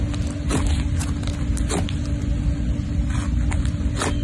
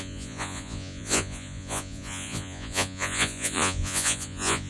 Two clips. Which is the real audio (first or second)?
first